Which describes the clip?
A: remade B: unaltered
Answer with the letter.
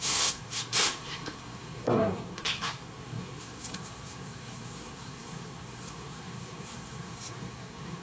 A